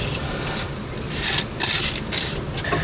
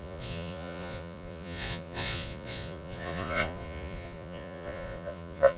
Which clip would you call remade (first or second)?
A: second